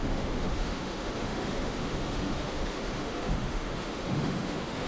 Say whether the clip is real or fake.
fake